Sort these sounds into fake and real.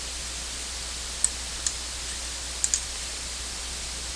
real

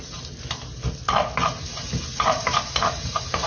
real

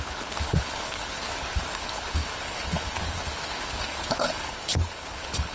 fake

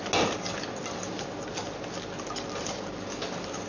real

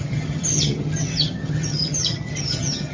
fake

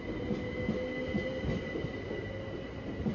real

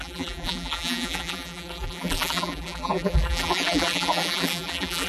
fake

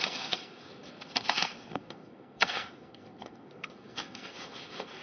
fake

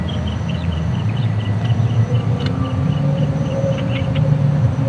fake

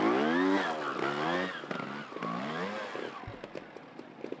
real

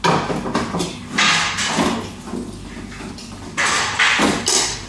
real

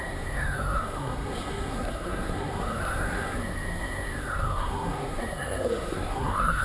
fake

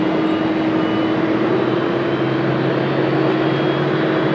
real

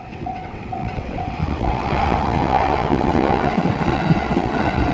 fake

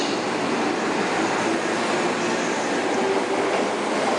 real